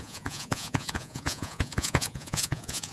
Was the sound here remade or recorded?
remade